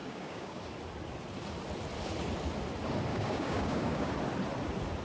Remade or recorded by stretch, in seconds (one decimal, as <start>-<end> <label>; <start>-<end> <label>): 0.0-0.6 remade; 0.6-3.1 recorded; 3.1-4.1 remade; 4.1-5.0 recorded